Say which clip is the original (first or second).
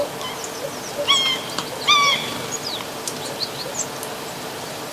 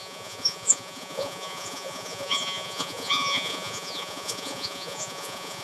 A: first